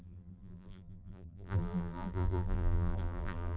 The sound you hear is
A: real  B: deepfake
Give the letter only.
B